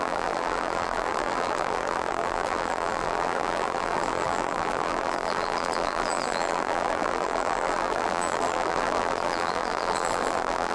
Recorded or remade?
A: remade